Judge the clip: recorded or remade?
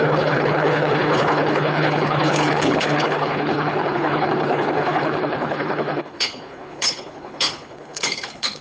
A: remade